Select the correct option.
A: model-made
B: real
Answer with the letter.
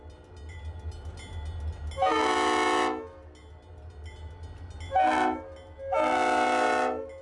B